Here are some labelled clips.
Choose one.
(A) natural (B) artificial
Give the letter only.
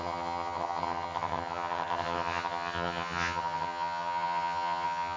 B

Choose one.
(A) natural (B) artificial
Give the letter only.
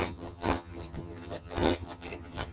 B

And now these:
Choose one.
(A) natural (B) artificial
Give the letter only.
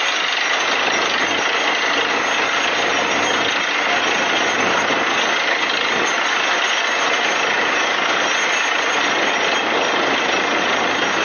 A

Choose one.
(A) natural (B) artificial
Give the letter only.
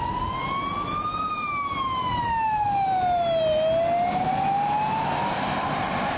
A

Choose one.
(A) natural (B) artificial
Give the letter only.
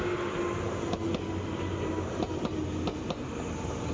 A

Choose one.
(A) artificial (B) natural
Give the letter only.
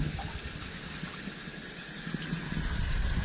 B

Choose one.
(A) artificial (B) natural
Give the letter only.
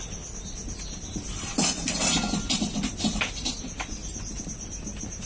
B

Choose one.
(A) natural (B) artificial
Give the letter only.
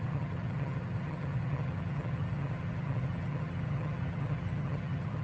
B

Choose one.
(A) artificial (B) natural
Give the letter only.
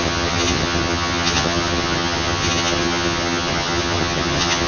A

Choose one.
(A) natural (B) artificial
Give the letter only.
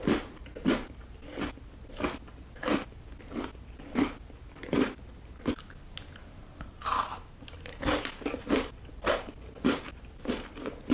A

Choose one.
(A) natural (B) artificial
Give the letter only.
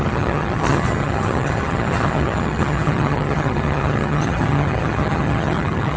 B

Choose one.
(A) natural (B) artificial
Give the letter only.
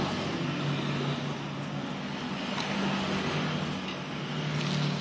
A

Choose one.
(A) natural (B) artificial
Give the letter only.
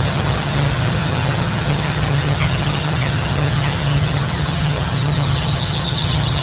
B